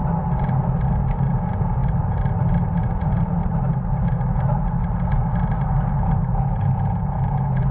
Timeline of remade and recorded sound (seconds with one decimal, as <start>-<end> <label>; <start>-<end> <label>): 0.0-1.3 recorded; 1.3-1.8 remade; 1.8-2.8 recorded; 2.8-3.4 remade; 3.4-6.4 recorded; 6.4-7.7 remade

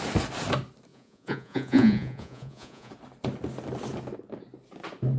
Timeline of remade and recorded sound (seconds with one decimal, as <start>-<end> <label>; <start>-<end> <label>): 0.0-0.9 recorded; 0.9-2.9 remade; 2.9-5.2 recorded

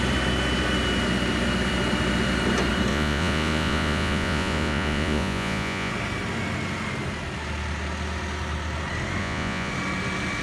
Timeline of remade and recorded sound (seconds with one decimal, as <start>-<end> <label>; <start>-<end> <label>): 0.0-2.9 recorded; 2.9-5.9 remade; 5.9-9.2 recorded; 9.2-9.7 remade; 9.7-10.4 recorded

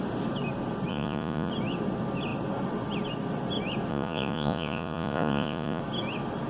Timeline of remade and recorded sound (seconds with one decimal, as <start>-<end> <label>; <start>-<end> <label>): 0.0-0.9 recorded; 0.9-1.5 remade; 1.5-3.9 recorded; 3.9-5.8 remade; 5.8-6.5 recorded

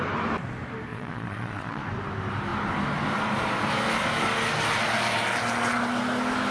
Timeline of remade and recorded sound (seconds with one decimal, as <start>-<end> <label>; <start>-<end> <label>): 0.0-0.9 recorded; 0.9-1.8 remade; 1.8-6.5 recorded

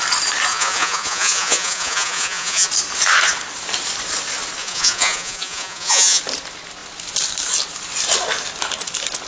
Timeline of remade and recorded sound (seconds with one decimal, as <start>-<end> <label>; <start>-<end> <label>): 0.0-0.5 recorded; 0.5-2.7 remade; 2.7-4.6 recorded; 4.6-6.2 remade; 6.2-9.3 recorded